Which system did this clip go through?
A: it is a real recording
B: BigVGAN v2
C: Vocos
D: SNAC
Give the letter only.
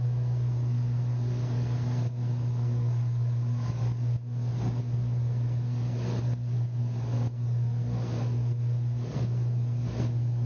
D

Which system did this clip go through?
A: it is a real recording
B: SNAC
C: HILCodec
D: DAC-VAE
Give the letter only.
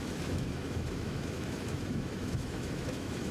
D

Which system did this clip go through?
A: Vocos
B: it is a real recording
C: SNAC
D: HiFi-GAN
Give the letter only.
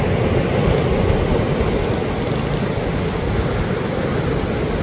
B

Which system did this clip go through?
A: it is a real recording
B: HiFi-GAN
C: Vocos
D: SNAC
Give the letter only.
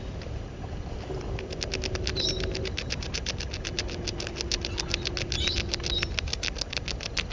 A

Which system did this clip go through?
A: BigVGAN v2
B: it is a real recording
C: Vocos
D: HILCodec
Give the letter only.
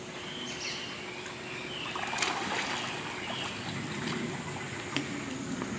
B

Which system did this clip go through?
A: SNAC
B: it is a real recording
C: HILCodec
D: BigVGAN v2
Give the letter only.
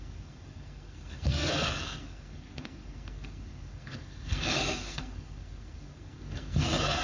A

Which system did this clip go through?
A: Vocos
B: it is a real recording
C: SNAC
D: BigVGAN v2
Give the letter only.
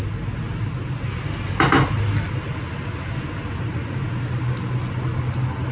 B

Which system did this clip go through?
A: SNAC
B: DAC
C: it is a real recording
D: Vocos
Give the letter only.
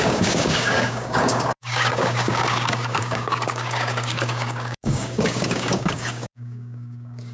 B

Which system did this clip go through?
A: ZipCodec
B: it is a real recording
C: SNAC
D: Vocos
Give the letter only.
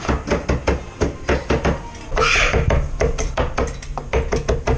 B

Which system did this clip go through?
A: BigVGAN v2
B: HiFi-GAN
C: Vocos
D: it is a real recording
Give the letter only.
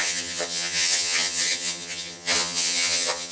B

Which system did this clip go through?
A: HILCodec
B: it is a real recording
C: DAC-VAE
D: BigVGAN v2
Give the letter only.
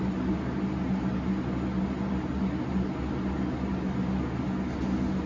B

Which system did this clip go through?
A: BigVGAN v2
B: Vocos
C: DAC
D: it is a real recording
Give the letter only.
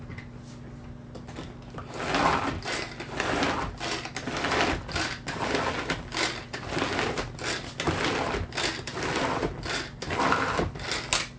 D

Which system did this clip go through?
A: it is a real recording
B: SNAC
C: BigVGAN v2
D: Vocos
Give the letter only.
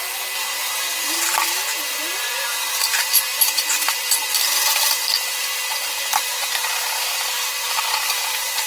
C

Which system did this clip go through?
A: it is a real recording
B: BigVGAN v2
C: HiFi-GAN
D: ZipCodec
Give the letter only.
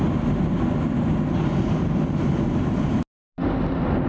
A